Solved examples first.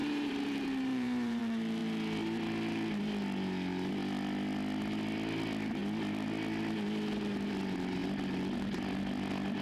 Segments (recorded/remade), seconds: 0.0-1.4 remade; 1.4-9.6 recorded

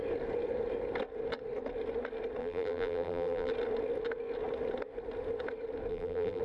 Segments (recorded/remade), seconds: 0.0-2.4 recorded; 2.4-3.5 remade; 3.5-5.9 recorded; 5.9-6.4 remade

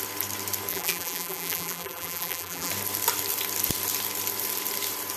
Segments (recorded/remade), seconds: 0.0-0.7 recorded; 0.7-2.7 remade; 2.7-5.2 recorded

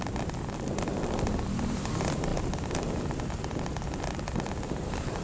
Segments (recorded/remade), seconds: 0.0-5.2 remade

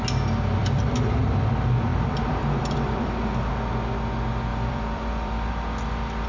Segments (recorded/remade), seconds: 0.0-0.6 recorded; 0.6-1.4 remade; 1.4-1.9 recorded; 1.9-3.5 remade; 3.5-4.5 recorded; 4.5-5.5 remade; 5.5-6.3 recorded